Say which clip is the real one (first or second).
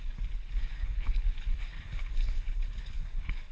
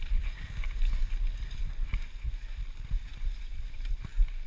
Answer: second